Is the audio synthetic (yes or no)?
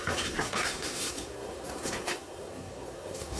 yes